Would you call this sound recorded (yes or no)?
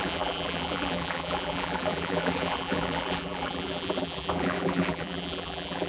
no